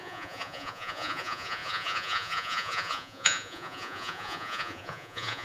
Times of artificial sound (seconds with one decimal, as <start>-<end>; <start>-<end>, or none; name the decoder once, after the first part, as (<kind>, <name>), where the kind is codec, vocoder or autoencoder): 0.0-5.4 (vocoder, Vocos)